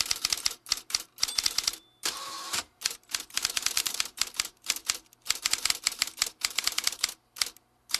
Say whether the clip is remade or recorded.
remade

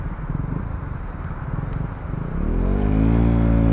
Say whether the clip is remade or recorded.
remade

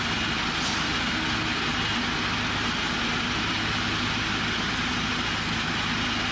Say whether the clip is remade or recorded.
recorded